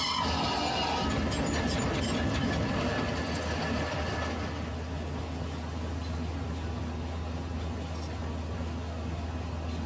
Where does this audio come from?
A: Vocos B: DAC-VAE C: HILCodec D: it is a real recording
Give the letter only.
D